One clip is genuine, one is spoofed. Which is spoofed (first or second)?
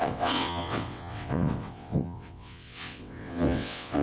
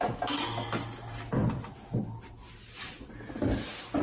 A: first